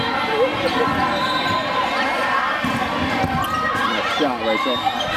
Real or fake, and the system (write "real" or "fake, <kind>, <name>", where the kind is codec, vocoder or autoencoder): real